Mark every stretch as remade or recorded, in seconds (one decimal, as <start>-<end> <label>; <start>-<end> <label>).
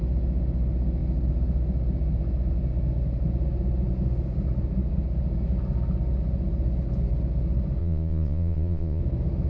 0.0-7.8 recorded; 7.8-9.0 remade; 9.0-9.5 recorded